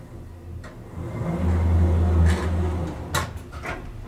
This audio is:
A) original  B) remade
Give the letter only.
A